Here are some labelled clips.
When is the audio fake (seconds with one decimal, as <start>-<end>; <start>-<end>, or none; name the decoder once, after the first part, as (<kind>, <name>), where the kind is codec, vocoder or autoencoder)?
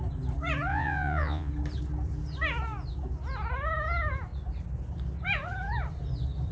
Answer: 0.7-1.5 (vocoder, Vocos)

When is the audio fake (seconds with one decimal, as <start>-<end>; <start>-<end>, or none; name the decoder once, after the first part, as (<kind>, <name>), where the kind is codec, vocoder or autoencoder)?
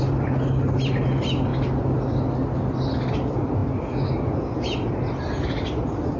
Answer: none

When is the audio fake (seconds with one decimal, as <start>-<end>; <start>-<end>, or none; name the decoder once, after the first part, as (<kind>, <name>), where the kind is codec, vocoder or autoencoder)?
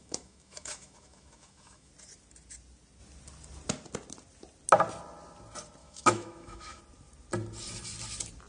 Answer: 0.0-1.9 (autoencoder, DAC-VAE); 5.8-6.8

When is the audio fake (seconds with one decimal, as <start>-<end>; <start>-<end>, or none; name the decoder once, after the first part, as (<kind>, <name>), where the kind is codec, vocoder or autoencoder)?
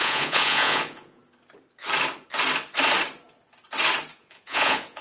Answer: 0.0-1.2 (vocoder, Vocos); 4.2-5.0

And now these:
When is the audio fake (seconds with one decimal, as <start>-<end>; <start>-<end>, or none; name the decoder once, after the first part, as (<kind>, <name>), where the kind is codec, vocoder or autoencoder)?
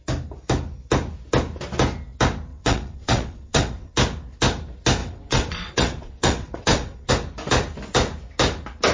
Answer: 2.5-3.9 (vocoder, WaveNeXt); 5.0-7.1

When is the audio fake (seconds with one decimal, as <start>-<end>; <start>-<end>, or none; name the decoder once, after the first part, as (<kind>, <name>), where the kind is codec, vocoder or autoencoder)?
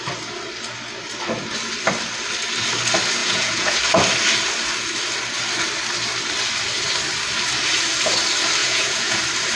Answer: 3.2-3.8 (vocoder, Vocos); 8.6-9.2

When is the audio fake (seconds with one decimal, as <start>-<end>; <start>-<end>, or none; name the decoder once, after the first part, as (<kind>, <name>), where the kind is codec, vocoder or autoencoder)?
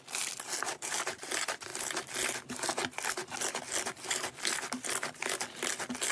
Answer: none